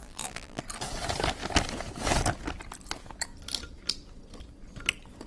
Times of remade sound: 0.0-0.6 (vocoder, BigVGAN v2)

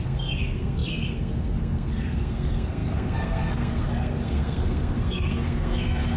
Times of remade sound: 0.0-6.2 (codec, SNAC)

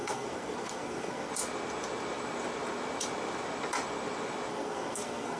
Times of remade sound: 0.0-1.3 (codec, SNAC); 4.5-5.4

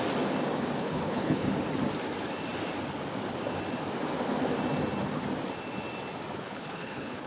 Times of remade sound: 0.8-1.5 (codec, HILCodec); 6.3-7.3